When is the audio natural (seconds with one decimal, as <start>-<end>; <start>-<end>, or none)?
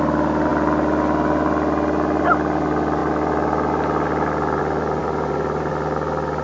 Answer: 0.0-5.0; 5.7-6.4